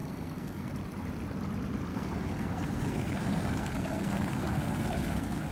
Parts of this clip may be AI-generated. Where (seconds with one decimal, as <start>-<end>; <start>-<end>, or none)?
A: 0.0-0.7; 1.9-5.5

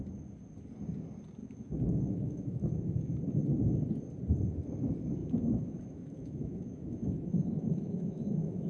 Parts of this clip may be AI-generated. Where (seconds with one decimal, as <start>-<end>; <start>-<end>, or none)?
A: 1.4-3.2; 5.2-8.7

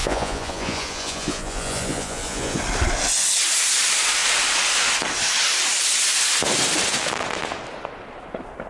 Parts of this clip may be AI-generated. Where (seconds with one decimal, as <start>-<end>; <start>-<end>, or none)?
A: 0.0-2.6

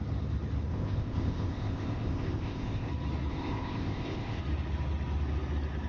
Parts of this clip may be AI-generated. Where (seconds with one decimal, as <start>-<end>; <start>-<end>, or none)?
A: 0.7-2.9; 3.3-4.4

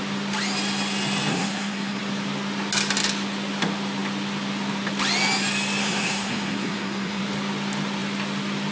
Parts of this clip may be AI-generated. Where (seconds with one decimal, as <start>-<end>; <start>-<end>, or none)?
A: 1.3-2.0; 5.8-7.2